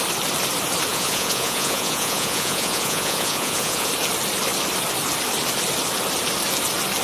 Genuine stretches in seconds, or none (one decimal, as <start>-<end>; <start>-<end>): 0.0-0.9; 3.9-7.0